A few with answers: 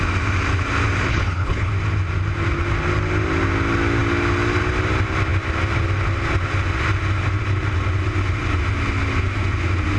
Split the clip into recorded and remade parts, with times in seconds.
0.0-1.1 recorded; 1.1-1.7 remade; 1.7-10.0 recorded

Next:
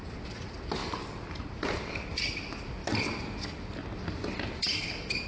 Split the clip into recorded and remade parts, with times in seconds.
0.0-0.8 recorded; 0.8-1.5 remade; 1.5-5.3 recorded

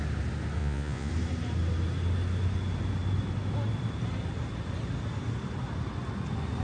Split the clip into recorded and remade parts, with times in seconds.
0.0-0.6 recorded; 0.6-1.1 remade; 1.1-6.6 recorded

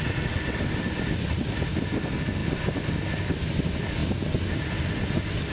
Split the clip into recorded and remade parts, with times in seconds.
0.0-5.5 recorded

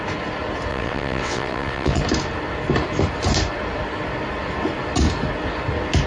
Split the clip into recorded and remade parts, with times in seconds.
0.0-0.7 recorded; 0.7-2.0 remade; 2.0-6.1 recorded

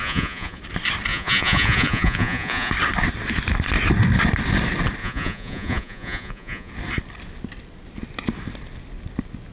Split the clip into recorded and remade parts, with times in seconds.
0.0-0.6 remade; 0.6-1.1 recorded; 1.1-2.7 remade; 2.7-5.0 recorded; 5.0-6.7 remade; 6.7-9.5 recorded

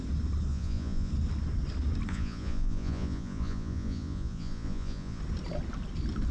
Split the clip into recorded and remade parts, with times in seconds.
0.0-0.5 recorded; 0.5-1.1 remade; 1.1-2.1 recorded; 2.1-5.2 remade; 5.2-6.3 recorded

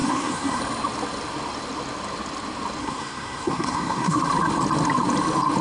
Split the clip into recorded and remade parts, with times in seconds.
0.0-0.6 remade; 0.6-2.8 recorded; 2.8-4.2 remade; 4.2-5.6 recorded